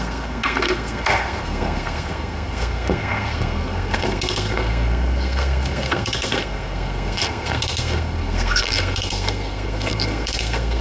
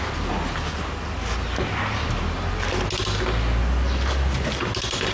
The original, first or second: second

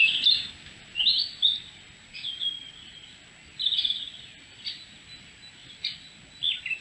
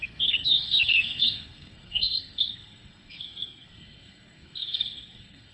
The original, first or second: first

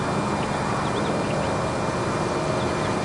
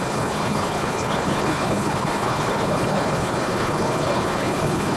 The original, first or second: first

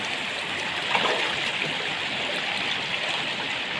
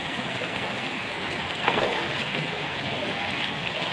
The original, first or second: first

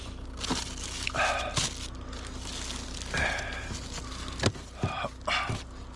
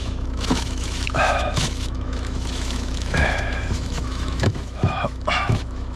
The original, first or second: first